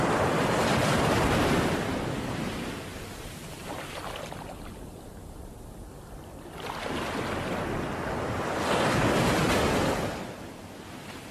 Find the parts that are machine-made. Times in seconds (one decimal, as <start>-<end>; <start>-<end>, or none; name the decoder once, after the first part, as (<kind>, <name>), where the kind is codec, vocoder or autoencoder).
none

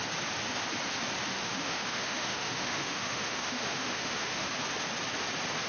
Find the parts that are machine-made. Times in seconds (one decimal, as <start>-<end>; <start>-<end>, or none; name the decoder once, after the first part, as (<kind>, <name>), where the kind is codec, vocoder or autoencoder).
1.3-4.5 (autoencoder, DAC-VAE)

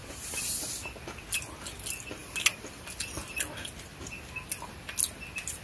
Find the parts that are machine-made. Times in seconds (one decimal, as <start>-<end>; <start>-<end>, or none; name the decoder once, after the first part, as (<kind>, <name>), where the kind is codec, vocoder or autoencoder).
none

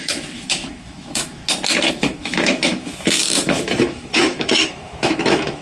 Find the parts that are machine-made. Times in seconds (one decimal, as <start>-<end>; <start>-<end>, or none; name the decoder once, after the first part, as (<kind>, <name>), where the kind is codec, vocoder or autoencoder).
0.0-1.4 (autoencoder, DAC-VAE); 1.9-5.6

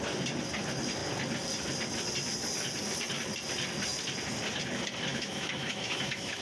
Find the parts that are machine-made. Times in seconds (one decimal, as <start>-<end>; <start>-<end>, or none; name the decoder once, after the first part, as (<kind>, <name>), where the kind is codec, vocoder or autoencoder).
5.1-6.4 (autoencoder, DAC-VAE)

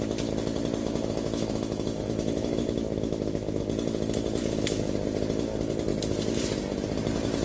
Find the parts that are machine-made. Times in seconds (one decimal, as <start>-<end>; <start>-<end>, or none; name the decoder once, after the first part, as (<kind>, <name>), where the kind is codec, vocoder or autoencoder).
0.8-3.6 (autoencoder, DAC-VAE); 4.4-4.9

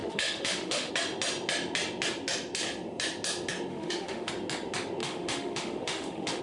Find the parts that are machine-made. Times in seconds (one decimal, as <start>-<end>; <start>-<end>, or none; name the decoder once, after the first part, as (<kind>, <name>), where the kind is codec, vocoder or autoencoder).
0.0-0.9 (autoencoder, DAC-VAE); 3.7-4.3; 5.0-6.4

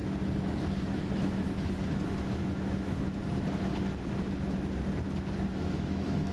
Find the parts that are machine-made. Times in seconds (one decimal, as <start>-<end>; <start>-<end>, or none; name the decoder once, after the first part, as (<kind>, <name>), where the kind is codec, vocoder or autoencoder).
0.7-3.2 (autoencoder, DAC-VAE); 5.5-6.3